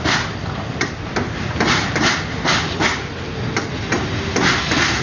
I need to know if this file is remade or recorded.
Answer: recorded